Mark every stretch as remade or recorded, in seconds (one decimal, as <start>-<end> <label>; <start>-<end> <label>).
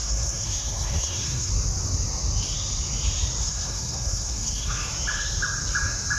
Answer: 0.0-1.5 remade; 1.5-3.4 recorded; 3.4-4.9 remade; 4.9-6.2 recorded